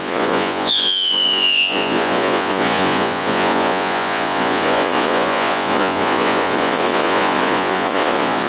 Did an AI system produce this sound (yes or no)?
yes